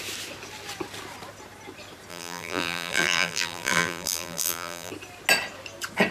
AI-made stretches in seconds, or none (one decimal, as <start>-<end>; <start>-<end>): 2.1-4.9